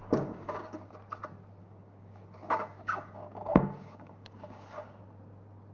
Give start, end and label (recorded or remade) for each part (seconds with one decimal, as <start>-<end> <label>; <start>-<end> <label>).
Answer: 0.0-0.9 remade; 0.9-1.6 recorded; 1.6-5.0 remade; 5.0-5.7 recorded